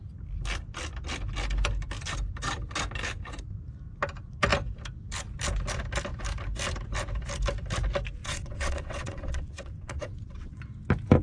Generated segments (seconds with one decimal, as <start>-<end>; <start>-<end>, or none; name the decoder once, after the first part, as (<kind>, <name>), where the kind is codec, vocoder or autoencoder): 8.2-10.6 (vocoder, WaveNeXt)